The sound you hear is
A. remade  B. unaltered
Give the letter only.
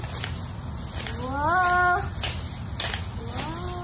B